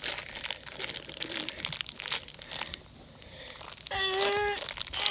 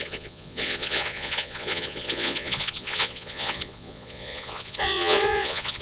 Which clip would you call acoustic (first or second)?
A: first